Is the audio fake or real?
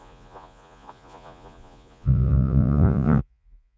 fake